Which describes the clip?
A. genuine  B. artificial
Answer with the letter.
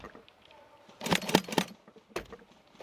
A